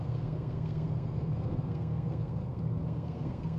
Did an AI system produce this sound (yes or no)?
yes